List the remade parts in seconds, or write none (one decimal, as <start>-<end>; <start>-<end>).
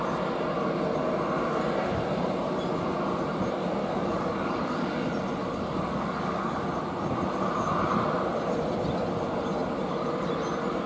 3.8-4.9; 5.4-6.6